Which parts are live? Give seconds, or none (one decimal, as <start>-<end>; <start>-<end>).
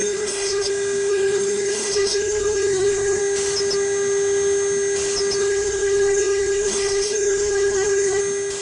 0.7-1.1; 3.2-5.4; 8.2-8.6